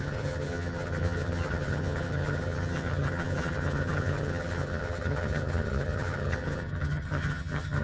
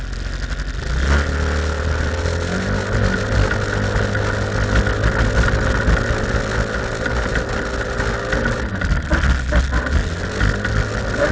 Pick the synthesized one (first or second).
first